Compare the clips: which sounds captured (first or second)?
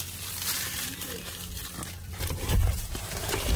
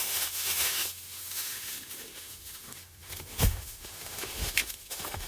first